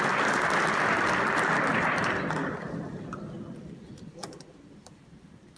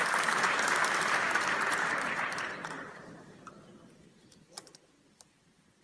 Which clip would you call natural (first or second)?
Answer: first